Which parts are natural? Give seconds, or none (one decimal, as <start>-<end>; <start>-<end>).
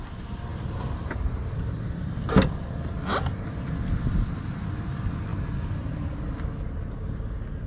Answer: 0.0-7.7